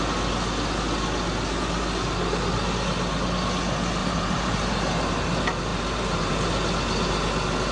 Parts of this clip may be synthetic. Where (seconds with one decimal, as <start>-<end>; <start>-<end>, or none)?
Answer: 4.0-4.7; 5.7-6.3